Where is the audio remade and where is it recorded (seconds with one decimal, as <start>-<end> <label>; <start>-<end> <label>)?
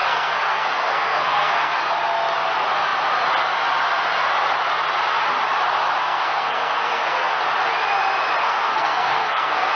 0.0-1.8 remade; 1.8-6.0 recorded; 6.0-7.4 remade; 7.4-8.4 recorded; 8.4-9.7 remade